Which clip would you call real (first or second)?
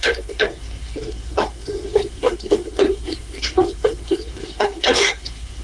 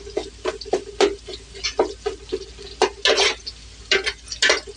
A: second